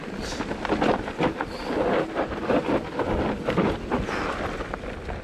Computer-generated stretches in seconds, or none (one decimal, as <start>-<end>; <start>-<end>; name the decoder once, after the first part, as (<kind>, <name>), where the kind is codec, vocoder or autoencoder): none